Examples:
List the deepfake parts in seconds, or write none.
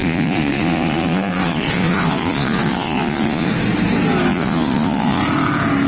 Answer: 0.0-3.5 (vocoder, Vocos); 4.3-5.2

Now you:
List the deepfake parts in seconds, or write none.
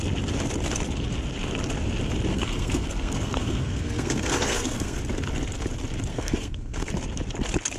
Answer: 2.3-5.0 (codec, SNAC); 6.1-6.9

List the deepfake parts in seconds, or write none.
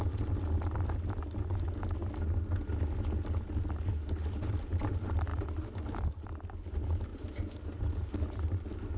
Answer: 7.1-7.8 (vocoder, BigVGAN v2)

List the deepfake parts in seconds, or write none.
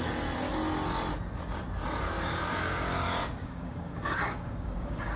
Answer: 2.0-5.2 (codec, DAC)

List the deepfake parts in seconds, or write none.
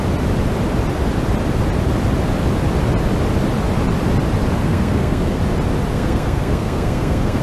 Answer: 4.6-5.4 (codec, SNAC); 5.9-7.4